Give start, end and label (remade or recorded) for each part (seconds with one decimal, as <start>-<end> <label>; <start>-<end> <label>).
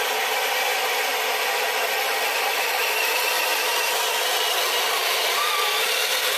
0.0-3.5 remade; 3.5-4.7 recorded; 4.7-6.4 remade